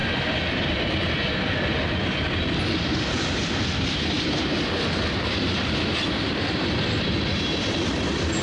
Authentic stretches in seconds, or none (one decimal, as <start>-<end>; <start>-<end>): 0.0-0.6